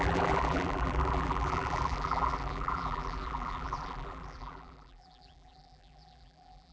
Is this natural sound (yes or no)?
no